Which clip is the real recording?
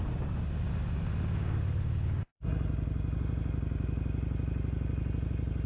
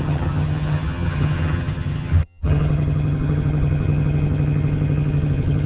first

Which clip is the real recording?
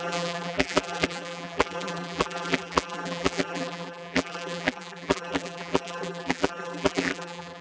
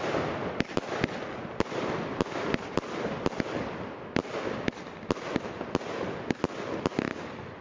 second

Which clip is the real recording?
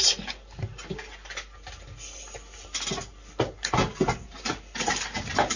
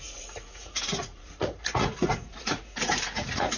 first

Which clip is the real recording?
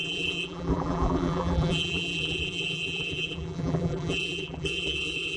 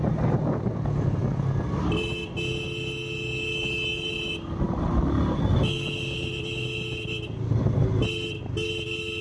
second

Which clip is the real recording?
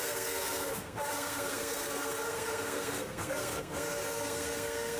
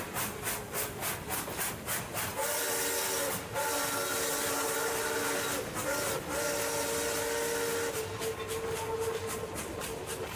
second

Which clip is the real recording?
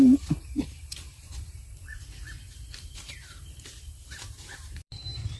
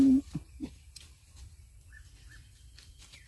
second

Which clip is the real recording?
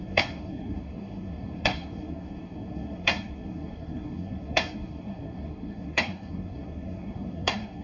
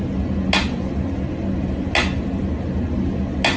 second